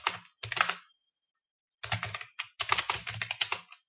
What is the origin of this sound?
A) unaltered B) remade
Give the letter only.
A